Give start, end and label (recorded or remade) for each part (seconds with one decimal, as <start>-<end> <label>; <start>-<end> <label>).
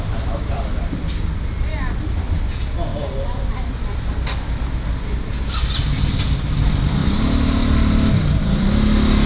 0.0-2.9 recorded; 2.9-3.5 remade; 3.5-7.0 recorded; 7.0-8.1 remade; 8.1-9.3 recorded